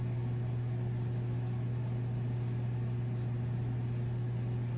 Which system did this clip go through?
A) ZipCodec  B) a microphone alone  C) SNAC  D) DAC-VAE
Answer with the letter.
B